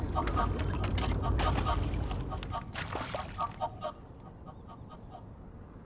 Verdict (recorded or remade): recorded